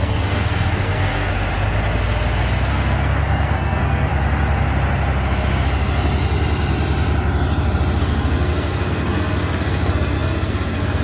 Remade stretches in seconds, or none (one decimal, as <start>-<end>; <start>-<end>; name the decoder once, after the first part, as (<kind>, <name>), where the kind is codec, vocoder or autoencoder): 0.0-1.3 (codec, SNAC); 2.7-4.1; 8.0-11.0